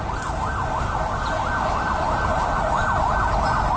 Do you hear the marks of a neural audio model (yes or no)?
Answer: no